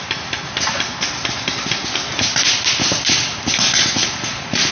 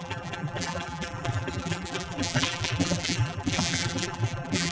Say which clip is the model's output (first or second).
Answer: second